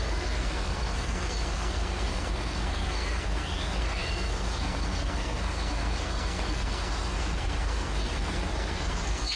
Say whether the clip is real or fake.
fake